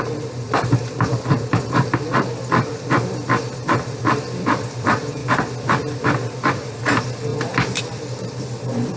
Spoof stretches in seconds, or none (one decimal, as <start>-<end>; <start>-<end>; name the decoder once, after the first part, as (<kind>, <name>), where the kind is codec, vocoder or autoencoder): 0.0-5.2 (vocoder, BigVGAN v2); 5.8-7.3; 7.8-9.0